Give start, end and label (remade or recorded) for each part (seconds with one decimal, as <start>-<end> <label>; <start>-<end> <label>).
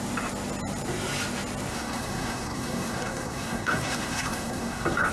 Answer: 0.0-1.7 recorded; 1.7-5.1 remade